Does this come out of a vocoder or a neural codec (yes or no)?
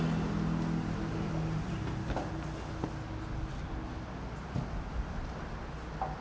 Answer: no